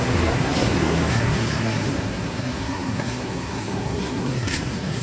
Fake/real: fake